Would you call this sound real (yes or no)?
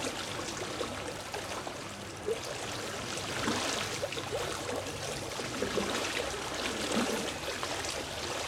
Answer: yes